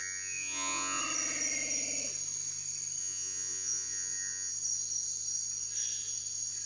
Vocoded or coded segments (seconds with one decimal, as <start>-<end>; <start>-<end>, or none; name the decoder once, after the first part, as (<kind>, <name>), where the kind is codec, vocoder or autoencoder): 0.0-1.0 (vocoder, Vocos); 3.0-4.5